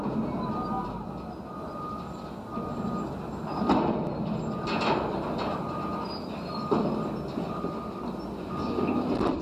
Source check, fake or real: real